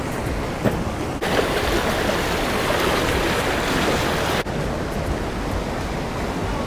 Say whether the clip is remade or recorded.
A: recorded